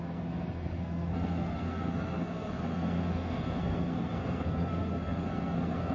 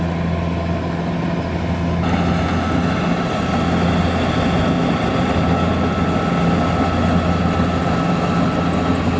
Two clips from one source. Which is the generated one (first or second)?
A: first